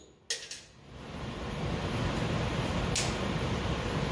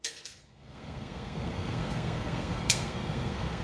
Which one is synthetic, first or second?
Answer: second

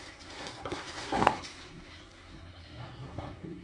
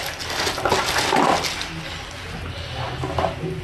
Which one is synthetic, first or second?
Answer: first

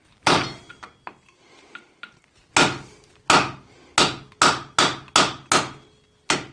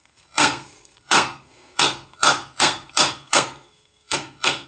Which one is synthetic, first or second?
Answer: second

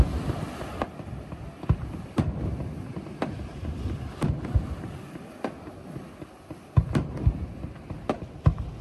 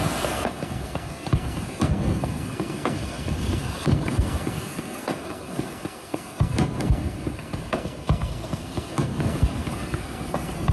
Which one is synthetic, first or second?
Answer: second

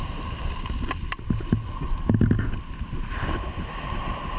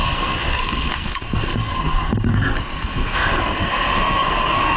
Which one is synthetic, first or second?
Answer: second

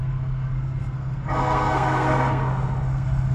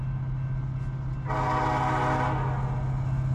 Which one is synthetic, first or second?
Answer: first